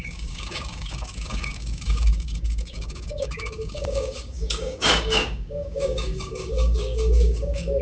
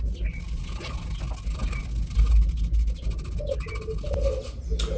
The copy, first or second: first